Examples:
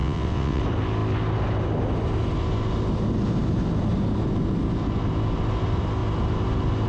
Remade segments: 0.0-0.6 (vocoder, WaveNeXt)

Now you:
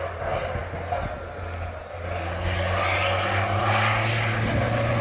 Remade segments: none

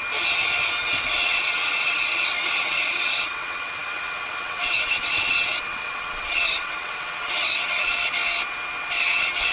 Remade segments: 1.1-8.2 (vocoder, WaveNeXt); 9.0-9.5

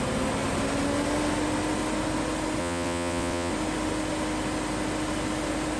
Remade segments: 2.6-3.5 (vocoder, WaveNeXt)